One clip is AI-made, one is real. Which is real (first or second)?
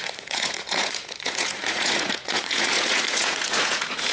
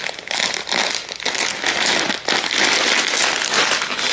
second